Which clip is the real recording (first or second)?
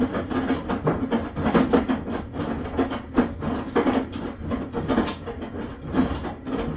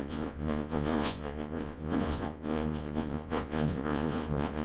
first